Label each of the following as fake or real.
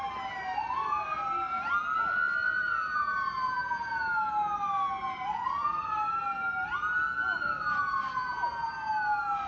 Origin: real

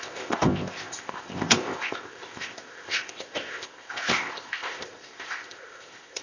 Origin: fake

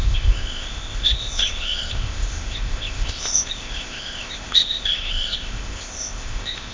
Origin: fake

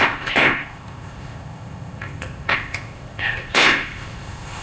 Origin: fake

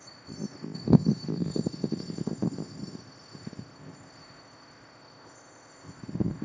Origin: fake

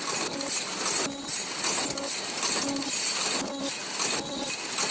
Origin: real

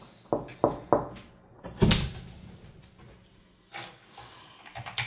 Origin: real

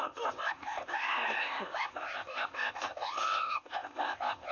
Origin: fake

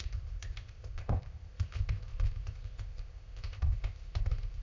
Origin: fake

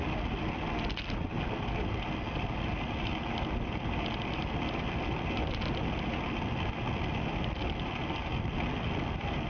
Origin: real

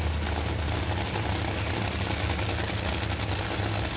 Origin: real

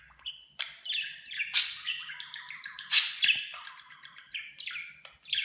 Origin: real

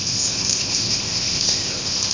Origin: fake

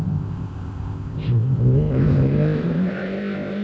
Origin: fake